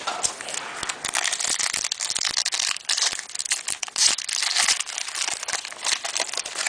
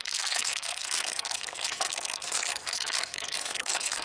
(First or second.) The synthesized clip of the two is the second